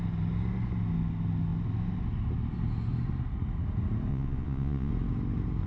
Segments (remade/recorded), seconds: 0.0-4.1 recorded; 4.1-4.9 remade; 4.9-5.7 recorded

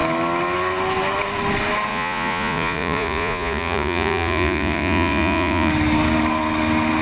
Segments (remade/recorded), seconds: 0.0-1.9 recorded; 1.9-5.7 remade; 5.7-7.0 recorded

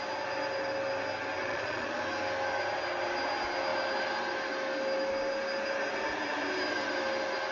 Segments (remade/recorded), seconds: 0.0-1.4 recorded; 1.4-2.0 remade; 2.0-7.5 recorded

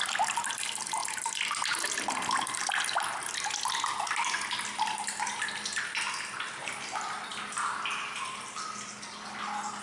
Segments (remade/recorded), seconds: 0.0-9.8 recorded

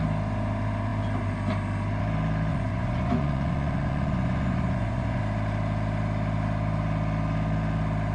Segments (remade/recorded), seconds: 0.0-2.5 recorded; 2.5-5.2 remade; 5.2-8.1 recorded

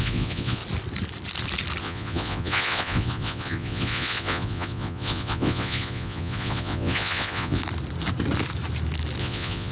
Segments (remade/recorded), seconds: 0.0-0.6 remade; 0.6-1.8 recorded; 1.8-7.6 remade; 7.6-9.2 recorded; 9.2-9.7 remade